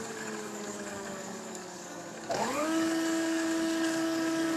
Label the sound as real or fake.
fake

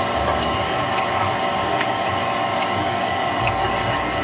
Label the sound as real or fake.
fake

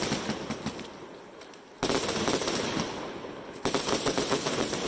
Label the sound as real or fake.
real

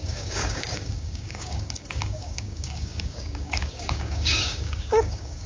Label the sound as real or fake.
fake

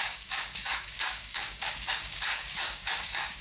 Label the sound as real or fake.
fake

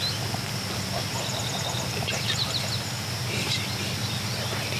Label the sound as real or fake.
real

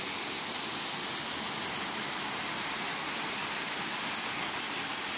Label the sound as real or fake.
real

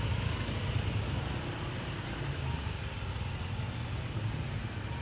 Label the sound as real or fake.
real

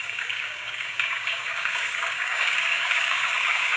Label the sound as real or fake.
fake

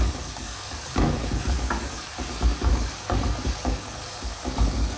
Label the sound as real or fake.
fake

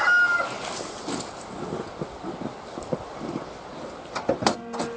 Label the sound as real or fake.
real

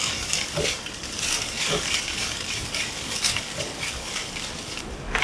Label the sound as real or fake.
fake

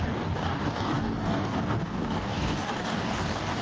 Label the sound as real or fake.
fake